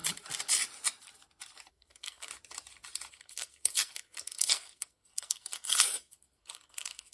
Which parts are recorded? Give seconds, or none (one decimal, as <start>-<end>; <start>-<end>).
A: 0.0-1.7; 2.3-3.1